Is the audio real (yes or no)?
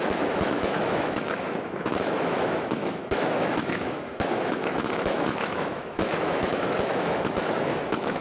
no